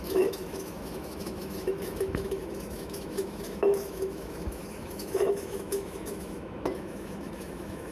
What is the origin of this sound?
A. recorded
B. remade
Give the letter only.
B